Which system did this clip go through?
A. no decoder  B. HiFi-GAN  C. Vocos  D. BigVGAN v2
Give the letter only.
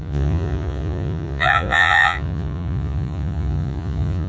C